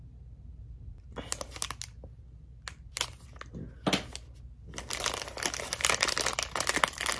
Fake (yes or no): no